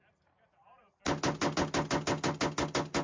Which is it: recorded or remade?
recorded